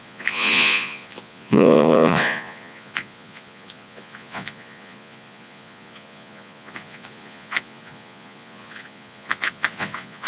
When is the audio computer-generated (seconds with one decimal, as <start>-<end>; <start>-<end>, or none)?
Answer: 0.0-10.3